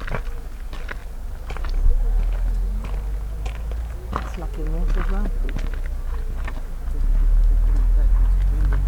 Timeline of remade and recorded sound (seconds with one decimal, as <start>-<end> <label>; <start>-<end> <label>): 0.0-8.9 recorded